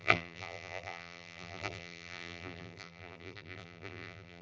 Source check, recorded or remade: remade